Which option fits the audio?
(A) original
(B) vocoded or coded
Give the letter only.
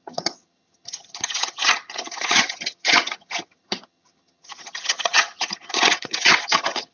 B